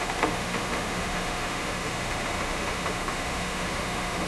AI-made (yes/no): yes